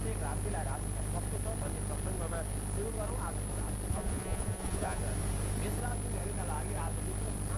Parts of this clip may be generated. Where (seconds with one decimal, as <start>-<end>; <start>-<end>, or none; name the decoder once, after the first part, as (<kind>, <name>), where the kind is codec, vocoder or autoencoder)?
3.9-5.0 (vocoder, Vocos)